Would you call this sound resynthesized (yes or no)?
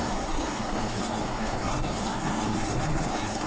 yes